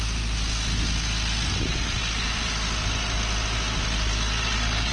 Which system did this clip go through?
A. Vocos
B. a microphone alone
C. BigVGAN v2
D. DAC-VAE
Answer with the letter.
B